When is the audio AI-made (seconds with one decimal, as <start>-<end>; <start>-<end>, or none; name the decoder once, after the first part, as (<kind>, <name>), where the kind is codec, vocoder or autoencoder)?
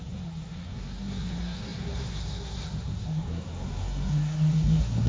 0.0-5.1 (codec, SNAC)